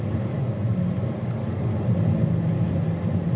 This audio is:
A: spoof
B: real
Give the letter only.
B